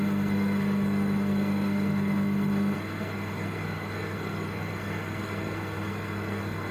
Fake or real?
fake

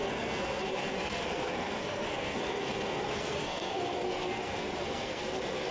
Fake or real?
fake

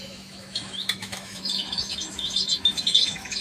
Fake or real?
fake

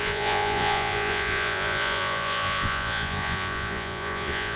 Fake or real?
fake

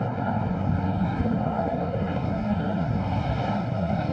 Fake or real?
fake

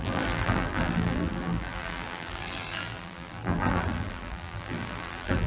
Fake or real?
fake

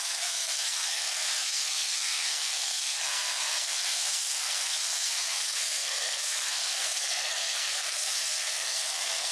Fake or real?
fake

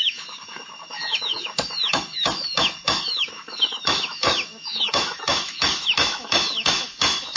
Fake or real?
fake